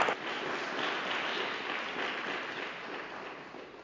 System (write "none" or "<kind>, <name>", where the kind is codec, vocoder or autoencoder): none